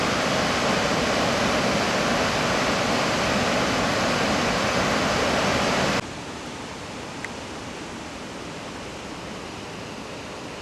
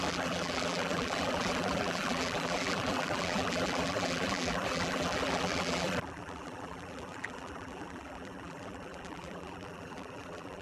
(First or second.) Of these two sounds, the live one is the first